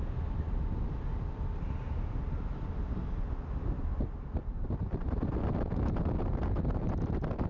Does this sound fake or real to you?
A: real